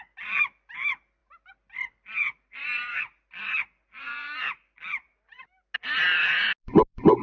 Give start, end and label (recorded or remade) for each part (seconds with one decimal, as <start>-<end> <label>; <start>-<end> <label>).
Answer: 0.0-7.2 recorded